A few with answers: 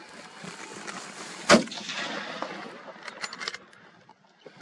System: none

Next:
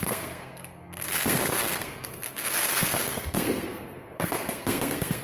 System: codec, SNAC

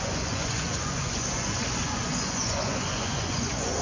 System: vocoder, Vocos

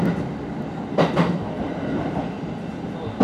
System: none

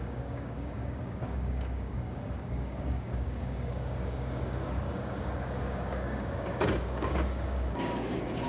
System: codec, DAC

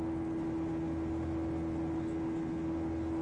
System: none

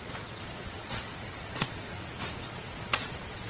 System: vocoder, Vocos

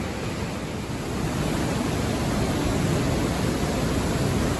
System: none